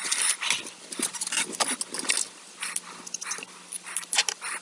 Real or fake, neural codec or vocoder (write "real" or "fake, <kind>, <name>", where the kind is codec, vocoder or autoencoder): real